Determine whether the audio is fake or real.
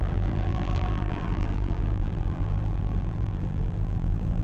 fake